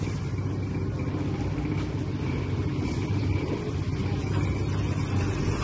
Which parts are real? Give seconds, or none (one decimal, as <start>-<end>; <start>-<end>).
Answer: 0.0-2.7; 5.0-5.6